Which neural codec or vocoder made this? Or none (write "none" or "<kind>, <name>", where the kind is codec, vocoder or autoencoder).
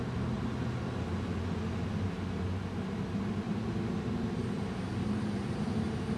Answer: none